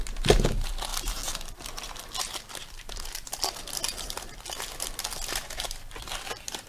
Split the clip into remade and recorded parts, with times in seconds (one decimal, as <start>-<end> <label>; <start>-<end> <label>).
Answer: 0.0-2.6 recorded; 2.6-6.7 remade